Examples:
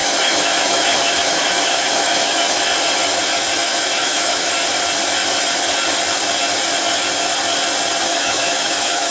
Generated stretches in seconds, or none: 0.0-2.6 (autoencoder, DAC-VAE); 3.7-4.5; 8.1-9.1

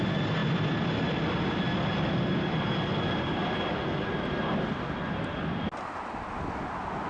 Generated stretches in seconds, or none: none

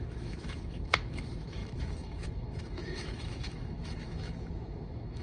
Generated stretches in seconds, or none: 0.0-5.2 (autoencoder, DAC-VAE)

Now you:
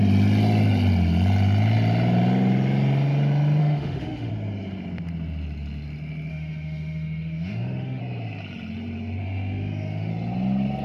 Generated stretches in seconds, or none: 3.6-4.3 (autoencoder, DAC-VAE); 6.3-8.0; 9.2-10.1

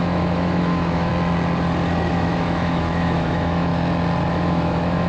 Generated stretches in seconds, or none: 0.0-1.1 (autoencoder, DAC-VAE); 2.1-3.7; 4.3-5.1

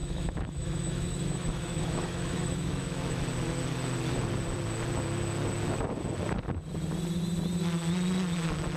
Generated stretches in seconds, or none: 0.0-3.2 (autoencoder, DAC-VAE)

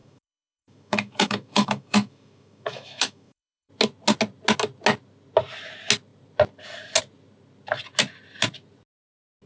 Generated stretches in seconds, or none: 0.0-3.7 (autoencoder, DAC-VAE)

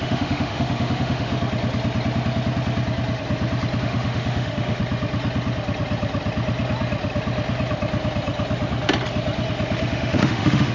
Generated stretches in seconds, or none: 0.0-1.3 (autoencoder, DAC-VAE); 3.8-4.8; 9.9-10.7